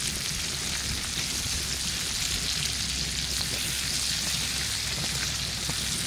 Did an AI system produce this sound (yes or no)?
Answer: no